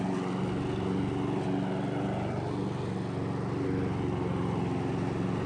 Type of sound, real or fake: real